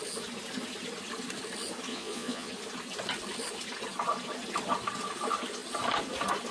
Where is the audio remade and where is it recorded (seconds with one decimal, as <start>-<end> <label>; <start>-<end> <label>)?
0.0-1.9 recorded; 1.9-2.5 remade; 2.5-6.5 recorded